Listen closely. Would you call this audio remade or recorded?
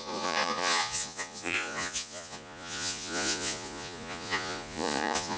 remade